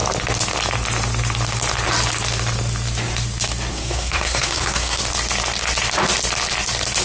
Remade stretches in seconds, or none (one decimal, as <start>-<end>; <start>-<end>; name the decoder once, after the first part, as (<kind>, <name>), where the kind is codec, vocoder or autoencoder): 3.7-5.0 (codec, SNAC)